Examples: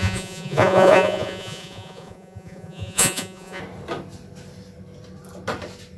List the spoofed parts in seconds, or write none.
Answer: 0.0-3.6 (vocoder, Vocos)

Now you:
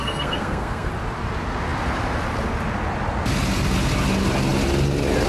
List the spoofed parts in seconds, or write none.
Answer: 0.0-0.9 (codec, SNAC)